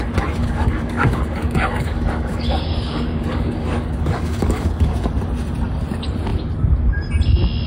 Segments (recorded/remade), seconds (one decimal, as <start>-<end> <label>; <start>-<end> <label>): 0.0-0.4 recorded; 0.4-5.0 remade; 5.0-7.7 recorded